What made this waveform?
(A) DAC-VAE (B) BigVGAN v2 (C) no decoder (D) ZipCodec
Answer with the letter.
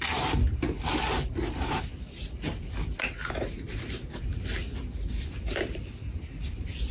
B